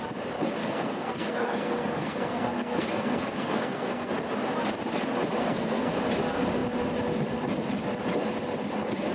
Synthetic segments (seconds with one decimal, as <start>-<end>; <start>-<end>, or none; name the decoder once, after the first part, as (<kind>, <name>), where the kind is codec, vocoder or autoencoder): 0.6-4.1 (codec, SNAC); 5.4-5.9